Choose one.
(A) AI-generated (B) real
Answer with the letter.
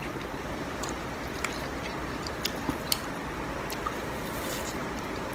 A